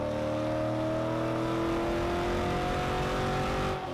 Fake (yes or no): no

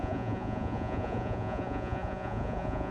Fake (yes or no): yes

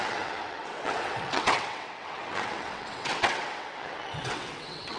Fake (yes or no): yes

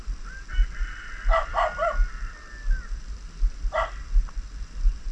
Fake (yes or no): no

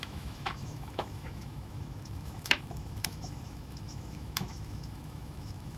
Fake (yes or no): yes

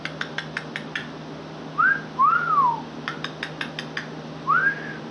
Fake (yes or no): no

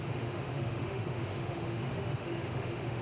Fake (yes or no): yes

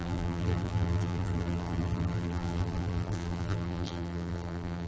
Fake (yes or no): yes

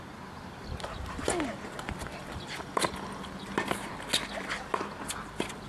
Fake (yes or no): no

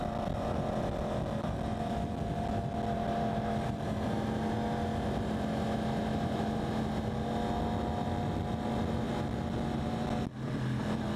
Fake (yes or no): no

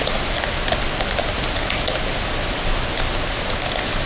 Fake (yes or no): no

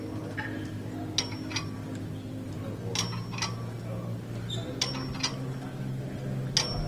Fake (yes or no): no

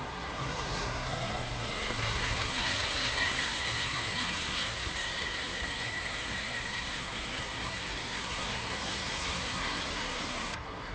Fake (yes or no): yes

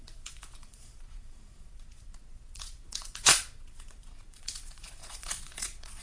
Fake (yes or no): yes